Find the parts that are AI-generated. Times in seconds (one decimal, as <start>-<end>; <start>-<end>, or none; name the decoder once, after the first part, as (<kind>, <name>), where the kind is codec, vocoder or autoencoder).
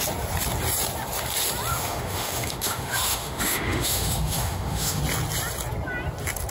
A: 1.7-5.0 (autoencoder, DAC-VAE)